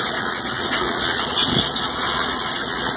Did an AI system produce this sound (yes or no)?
yes